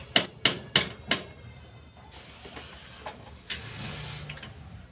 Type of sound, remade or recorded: recorded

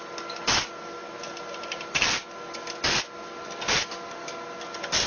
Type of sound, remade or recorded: recorded